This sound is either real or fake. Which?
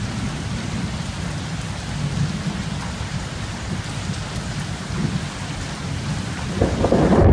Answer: real